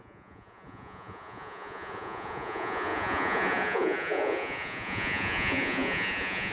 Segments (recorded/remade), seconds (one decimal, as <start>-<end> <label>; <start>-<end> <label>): 0.0-6.5 remade